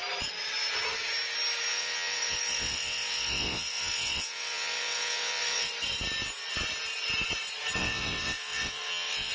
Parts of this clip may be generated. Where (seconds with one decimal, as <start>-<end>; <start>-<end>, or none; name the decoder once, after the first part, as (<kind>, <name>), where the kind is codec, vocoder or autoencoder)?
1.7-5.7 (vocoder, WaveNeXt); 7.8-9.3